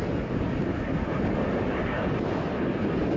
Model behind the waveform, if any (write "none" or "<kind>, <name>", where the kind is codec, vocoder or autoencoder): none